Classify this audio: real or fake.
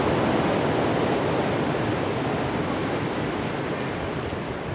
real